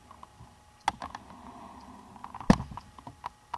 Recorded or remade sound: recorded